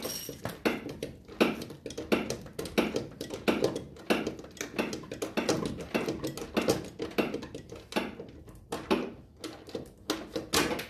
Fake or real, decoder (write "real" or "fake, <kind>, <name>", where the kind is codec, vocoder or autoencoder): real